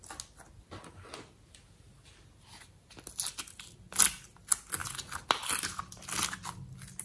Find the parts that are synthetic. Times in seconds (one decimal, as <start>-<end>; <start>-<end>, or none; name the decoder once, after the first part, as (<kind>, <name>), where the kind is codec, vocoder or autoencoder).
none